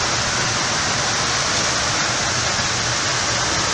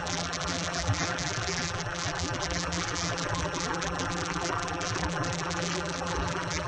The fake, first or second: second